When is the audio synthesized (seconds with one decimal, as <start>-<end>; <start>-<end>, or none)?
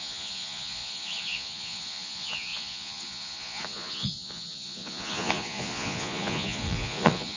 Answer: 0.0-7.4